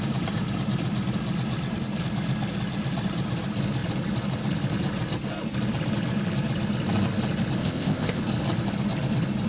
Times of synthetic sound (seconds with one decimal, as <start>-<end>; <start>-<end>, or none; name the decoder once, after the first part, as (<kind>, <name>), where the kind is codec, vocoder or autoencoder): 7.6-8.2 (codec, ZipCodec)